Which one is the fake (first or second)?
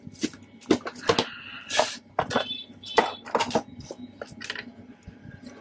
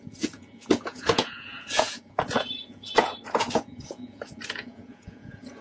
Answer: second